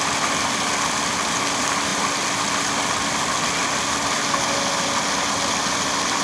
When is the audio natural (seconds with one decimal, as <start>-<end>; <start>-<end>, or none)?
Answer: 0.0-6.2